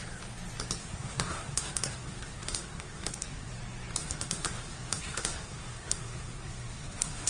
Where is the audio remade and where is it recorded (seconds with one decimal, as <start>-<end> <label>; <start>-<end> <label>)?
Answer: 0.0-0.8 recorded; 0.8-3.5 remade; 3.5-4.0 recorded; 4.0-7.3 remade